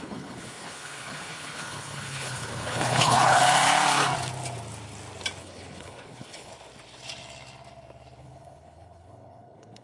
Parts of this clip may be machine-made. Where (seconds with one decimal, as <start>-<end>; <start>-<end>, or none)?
0.0-3.4; 5.4-6.5; 8.2-9.8